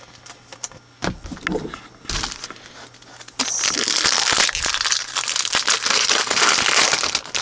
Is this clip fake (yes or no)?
no